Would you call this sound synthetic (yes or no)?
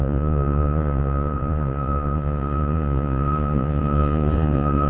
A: yes